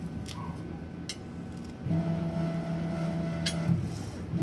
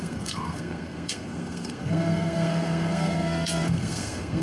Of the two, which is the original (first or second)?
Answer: first